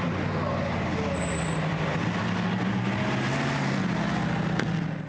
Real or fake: real